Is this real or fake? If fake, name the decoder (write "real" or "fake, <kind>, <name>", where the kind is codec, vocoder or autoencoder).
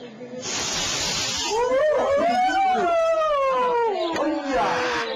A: real